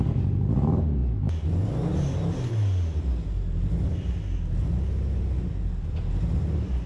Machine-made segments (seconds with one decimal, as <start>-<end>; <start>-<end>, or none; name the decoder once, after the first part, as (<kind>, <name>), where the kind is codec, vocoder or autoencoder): none